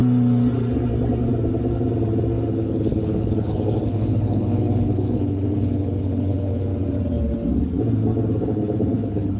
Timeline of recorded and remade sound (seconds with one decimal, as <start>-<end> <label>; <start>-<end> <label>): 0.0-2.5 recorded; 2.5-6.7 remade; 6.7-8.4 recorded; 8.4-9.4 remade